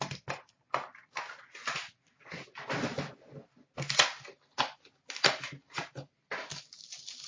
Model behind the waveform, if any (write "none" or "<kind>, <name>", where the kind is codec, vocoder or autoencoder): none